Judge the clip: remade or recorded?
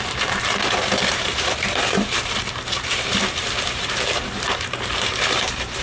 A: remade